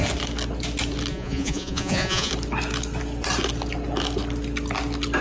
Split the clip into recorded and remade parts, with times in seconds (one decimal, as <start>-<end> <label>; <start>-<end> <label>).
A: 0.0-1.1 recorded; 1.1-2.3 remade; 2.3-5.2 recorded